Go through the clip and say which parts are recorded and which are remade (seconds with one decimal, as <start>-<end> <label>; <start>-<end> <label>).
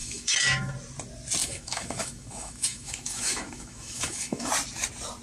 0.0-0.7 remade; 0.7-1.4 recorded; 1.4-4.5 remade; 4.5-5.2 recorded